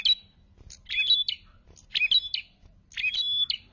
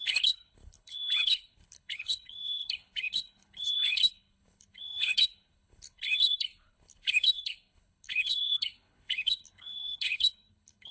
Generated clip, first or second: second